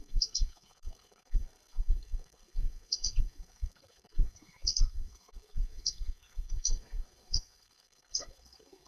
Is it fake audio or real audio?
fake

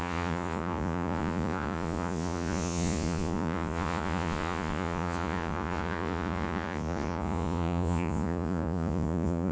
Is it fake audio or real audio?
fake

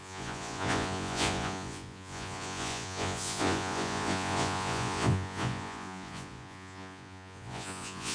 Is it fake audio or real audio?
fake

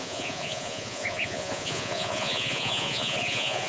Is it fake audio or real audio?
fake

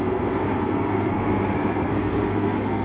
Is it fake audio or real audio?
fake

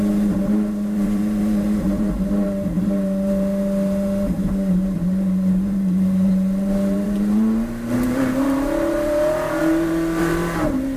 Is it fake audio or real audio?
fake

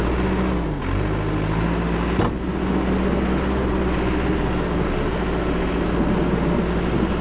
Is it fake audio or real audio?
real